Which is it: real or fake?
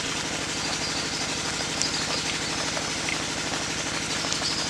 real